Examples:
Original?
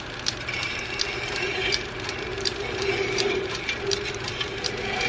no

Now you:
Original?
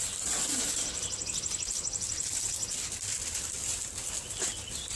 yes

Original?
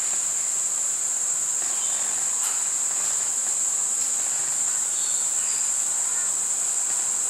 yes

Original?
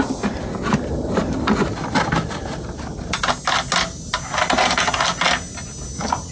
yes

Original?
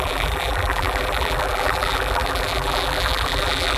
no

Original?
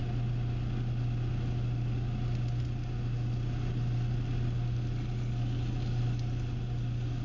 yes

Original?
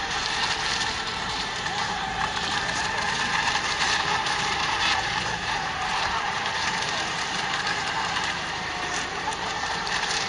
no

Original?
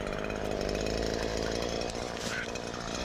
yes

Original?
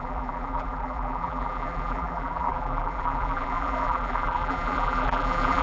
no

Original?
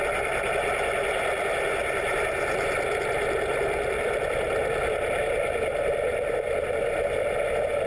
yes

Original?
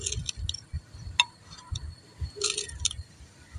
yes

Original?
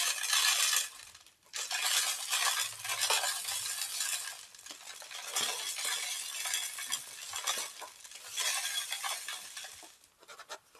yes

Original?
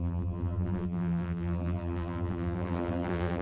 no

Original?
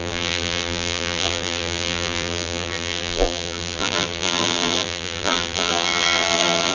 no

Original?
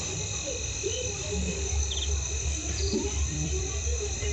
no